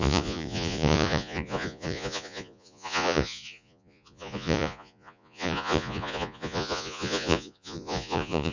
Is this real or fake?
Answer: fake